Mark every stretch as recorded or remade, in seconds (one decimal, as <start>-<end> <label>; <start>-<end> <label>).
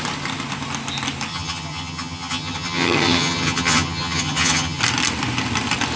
0.0-1.3 recorded; 1.3-4.8 remade; 4.8-6.0 recorded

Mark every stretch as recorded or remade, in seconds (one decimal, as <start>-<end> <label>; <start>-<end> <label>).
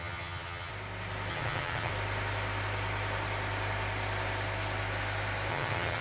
0.0-0.7 remade; 0.7-1.3 recorded; 1.3-1.9 remade; 1.9-5.5 recorded; 5.5-6.0 remade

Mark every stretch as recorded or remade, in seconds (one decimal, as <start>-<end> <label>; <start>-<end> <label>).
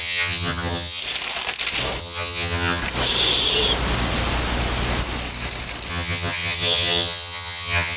0.0-1.0 remade; 1.0-2.0 recorded; 2.0-2.8 remade; 2.8-5.9 recorded; 5.9-8.0 remade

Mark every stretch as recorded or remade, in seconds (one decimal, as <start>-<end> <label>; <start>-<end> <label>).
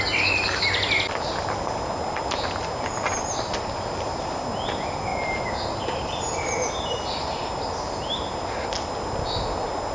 0.0-9.9 recorded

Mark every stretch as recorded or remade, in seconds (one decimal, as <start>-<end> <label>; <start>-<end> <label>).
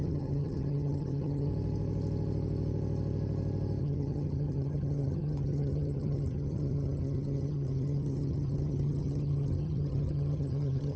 0.0-1.5 remade; 1.5-3.8 recorded; 3.8-11.0 remade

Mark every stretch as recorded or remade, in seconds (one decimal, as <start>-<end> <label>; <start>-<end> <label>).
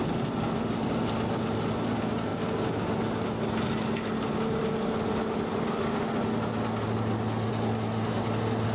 0.0-8.7 recorded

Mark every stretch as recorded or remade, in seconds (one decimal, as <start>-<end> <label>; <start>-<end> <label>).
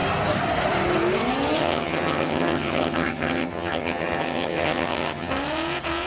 0.0-1.6 recorded; 1.6-5.3 remade; 5.3-6.1 recorded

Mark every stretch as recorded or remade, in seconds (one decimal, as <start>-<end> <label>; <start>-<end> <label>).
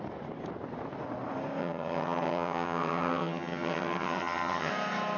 0.0-1.6 recorded; 1.6-4.7 remade; 4.7-5.2 recorded